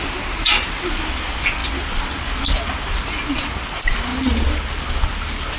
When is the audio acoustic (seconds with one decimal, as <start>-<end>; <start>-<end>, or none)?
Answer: 0.0-5.6